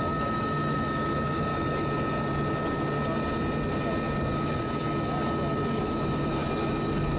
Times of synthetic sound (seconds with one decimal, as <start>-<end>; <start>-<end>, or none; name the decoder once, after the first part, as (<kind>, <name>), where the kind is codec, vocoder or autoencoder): 0.0-1.5 (autoencoder, DAC-VAE); 5.8-6.4